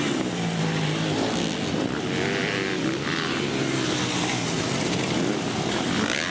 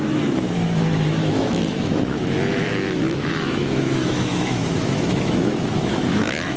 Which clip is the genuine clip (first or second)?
first